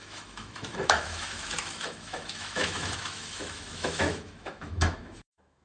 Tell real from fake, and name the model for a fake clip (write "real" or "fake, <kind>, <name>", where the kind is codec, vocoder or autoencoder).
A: fake, autoencoder, DAC-VAE